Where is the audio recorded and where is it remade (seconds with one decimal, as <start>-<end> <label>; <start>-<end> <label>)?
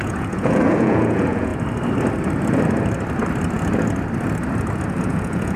0.0-1.5 remade; 1.5-4.9 recorded; 4.9-5.6 remade